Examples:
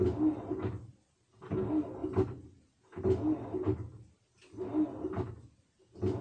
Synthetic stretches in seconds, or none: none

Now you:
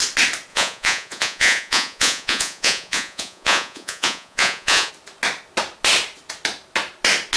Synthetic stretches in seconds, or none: 0.5-4.9 (vocoder, Vocos)